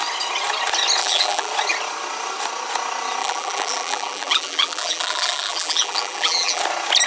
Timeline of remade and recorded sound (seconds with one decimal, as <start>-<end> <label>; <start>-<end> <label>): 0.0-1.0 recorded; 1.0-1.5 remade; 1.5-3.2 recorded; 3.2-6.6 remade; 6.6-7.1 recorded